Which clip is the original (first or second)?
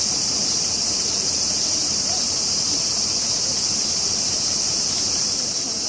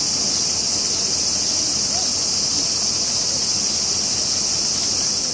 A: second